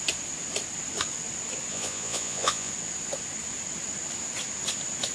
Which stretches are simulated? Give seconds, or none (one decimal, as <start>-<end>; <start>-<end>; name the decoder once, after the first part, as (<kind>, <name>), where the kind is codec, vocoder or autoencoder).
1.7-2.7 (vocoder, Vocos)